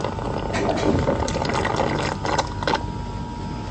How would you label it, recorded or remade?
recorded